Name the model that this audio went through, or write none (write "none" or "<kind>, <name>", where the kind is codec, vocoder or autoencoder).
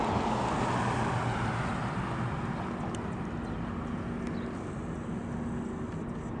none